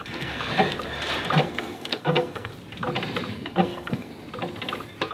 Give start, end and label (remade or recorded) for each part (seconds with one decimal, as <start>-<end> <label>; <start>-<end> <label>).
0.0-0.5 remade; 0.5-1.4 recorded; 1.4-2.5 remade; 2.5-3.3 recorded; 3.3-4.1 remade; 4.1-5.1 recorded